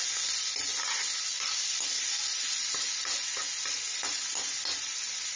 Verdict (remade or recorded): recorded